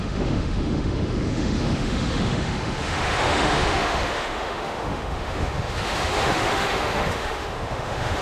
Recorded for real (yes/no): no